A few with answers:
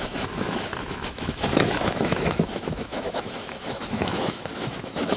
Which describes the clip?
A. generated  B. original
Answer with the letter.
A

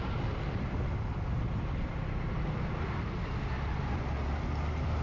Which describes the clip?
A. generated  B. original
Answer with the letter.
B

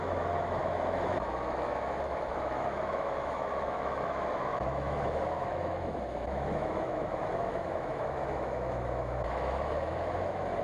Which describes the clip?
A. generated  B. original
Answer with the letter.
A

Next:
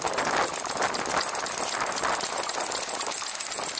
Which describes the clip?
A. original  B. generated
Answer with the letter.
A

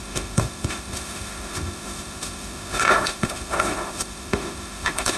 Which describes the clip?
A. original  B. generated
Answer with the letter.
B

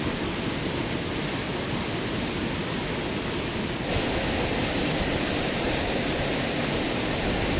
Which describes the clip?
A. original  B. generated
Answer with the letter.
A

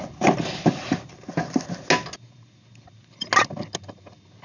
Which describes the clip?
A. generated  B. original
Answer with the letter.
B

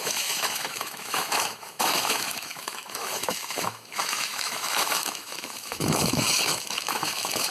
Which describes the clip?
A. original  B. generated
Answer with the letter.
B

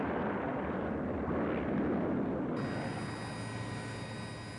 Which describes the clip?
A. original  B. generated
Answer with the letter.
A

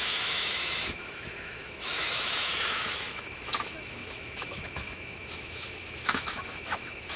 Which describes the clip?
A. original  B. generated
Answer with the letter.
B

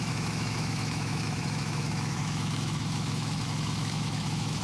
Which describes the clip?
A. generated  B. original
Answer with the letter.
A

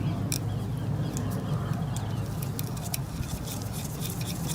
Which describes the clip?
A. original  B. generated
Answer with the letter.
A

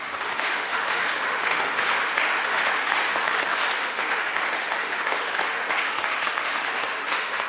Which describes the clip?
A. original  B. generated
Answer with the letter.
B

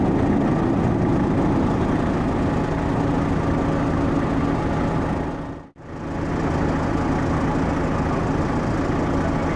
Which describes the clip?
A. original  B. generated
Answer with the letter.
A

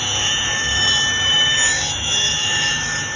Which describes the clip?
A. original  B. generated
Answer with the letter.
B